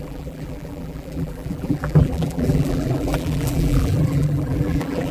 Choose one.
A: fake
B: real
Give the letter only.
A